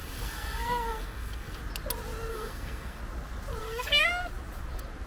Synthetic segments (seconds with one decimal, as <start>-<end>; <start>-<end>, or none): 0.0-1.6; 2.3-3.0; 3.6-4.1